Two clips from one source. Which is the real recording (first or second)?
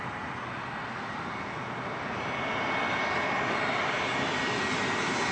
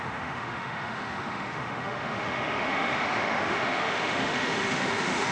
first